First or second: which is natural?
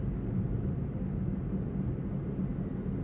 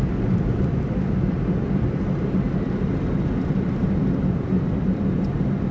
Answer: first